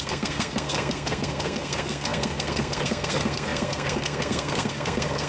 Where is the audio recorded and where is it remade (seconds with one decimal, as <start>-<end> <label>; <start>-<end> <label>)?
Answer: 0.0-5.3 remade